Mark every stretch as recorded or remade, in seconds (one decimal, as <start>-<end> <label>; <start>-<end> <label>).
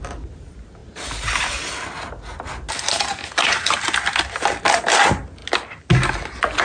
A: 0.0-6.6 recorded